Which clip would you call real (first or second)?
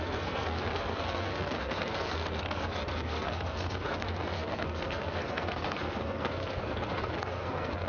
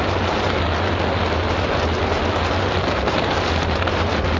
second